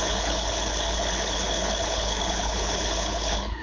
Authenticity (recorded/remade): remade